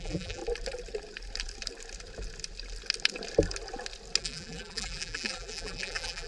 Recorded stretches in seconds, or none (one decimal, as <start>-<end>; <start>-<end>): 0.4-4.2